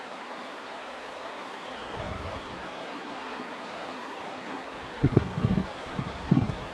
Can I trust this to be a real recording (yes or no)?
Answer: no